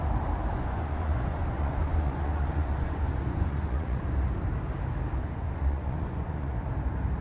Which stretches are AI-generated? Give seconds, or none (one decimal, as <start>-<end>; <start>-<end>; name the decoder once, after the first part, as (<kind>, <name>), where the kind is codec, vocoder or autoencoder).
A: 0.5-4.0 (vocoder, Vocos); 5.2-6.5